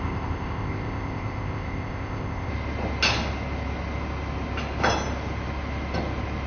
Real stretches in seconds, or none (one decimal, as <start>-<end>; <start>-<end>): 2.5-6.5